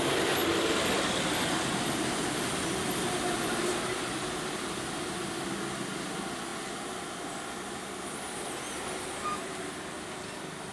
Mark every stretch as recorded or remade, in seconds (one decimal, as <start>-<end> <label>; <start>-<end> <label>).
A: 0.0-10.7 recorded

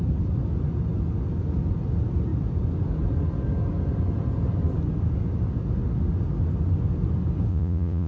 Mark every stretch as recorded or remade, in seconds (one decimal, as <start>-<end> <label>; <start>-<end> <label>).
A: 0.0-7.5 recorded; 7.5-8.1 remade

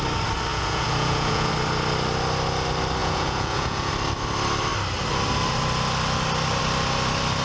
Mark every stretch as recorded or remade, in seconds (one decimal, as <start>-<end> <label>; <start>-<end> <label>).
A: 0.0-0.5 recorded; 0.5-1.5 remade; 1.5-3.0 recorded; 3.0-3.9 remade; 3.9-7.4 recorded

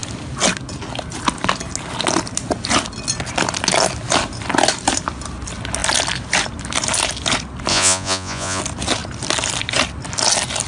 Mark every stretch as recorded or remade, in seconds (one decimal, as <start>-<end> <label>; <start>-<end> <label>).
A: 0.0-7.7 recorded; 7.7-8.6 remade; 8.6-10.7 recorded

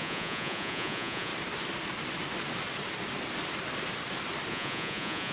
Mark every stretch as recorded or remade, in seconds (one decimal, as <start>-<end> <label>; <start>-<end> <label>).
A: 0.0-1.3 remade; 1.3-4.5 recorded; 4.5-5.3 remade

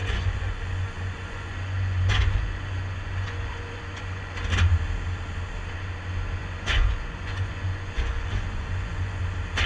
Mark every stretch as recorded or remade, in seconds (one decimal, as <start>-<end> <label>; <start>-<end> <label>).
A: 0.0-4.3 remade; 4.3-6.4 recorded; 6.4-9.2 remade; 9.2-9.7 recorded